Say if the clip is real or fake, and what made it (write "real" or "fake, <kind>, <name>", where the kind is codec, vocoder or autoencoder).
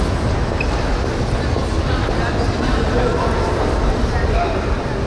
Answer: real